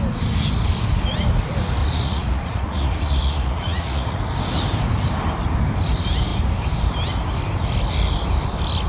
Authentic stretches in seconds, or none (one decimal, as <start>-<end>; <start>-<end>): 0.0-1.8; 4.2-8.9

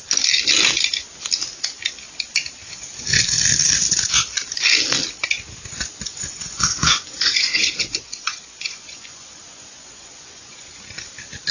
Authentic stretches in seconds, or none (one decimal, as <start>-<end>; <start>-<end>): 0.0-5.9; 10.8-11.5

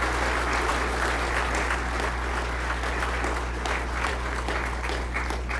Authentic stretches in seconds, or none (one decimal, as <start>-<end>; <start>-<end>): 0.0-5.6

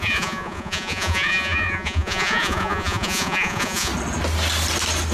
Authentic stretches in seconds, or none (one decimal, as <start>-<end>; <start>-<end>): 3.9-5.1

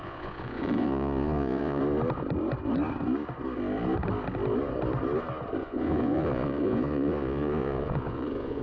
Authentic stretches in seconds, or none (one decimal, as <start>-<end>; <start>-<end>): 1.8-5.6

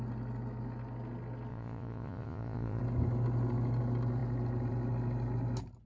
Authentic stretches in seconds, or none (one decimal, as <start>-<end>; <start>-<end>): 0.0-1.5; 2.8-5.9

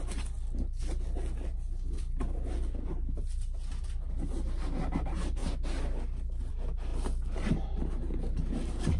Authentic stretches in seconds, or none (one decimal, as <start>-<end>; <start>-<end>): 0.0-9.0

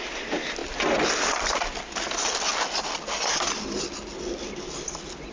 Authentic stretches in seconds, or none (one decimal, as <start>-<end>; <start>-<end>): 0.0-5.3